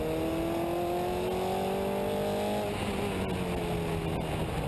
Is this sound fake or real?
real